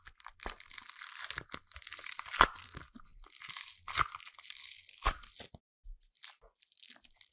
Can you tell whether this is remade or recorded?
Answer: recorded